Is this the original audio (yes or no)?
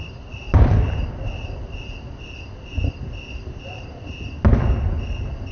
yes